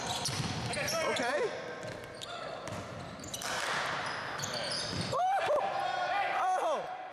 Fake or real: fake